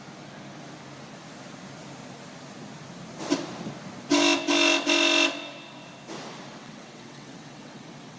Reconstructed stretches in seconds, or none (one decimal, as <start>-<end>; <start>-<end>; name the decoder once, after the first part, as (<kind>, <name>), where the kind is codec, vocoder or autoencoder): 6.6-8.2 (vocoder, WaveNeXt)